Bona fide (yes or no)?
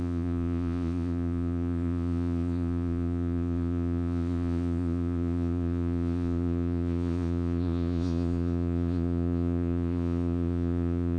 no